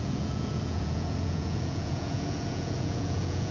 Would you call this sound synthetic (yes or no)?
yes